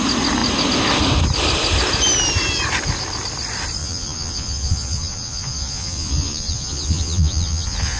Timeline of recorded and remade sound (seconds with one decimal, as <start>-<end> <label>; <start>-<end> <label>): 0.0-3.8 recorded; 3.8-8.0 remade